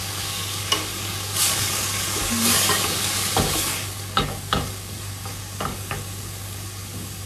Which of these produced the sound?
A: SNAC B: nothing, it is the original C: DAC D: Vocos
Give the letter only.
C